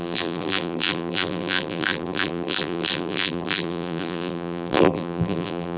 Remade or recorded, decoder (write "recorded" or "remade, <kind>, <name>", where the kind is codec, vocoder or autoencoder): remade, vocoder, BigVGAN v2